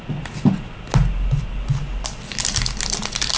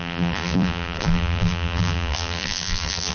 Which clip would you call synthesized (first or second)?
second